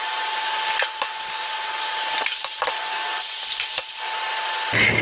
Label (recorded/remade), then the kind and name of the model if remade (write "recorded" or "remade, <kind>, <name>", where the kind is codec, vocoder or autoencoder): recorded